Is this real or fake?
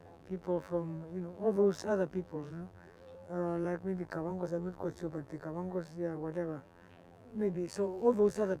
fake